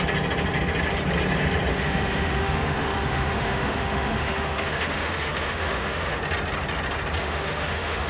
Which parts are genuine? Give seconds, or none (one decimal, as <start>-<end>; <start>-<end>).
0.0-1.7; 6.2-7.2